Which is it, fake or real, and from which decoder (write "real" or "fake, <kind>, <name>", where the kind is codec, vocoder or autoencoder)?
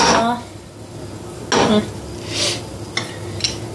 real